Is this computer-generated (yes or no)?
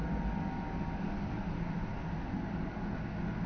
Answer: no